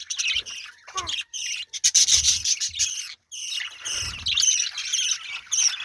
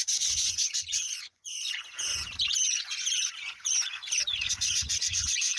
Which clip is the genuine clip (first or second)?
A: first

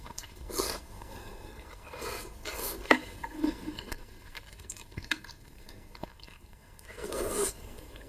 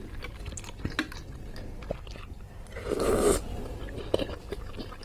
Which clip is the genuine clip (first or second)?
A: second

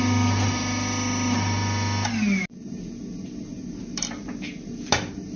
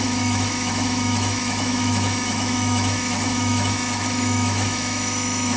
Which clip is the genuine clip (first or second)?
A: first